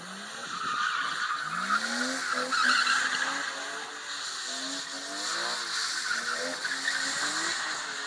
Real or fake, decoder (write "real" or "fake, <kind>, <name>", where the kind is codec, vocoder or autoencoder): real